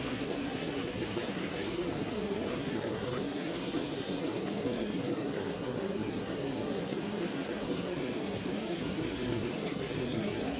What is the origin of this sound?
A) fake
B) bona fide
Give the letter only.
A